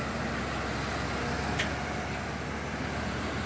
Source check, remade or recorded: recorded